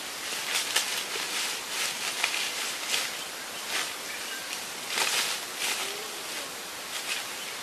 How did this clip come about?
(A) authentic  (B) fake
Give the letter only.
A